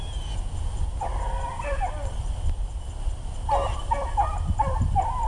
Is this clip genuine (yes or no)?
yes